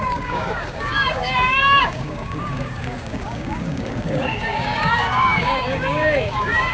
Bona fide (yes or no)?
no